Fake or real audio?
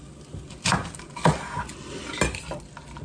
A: real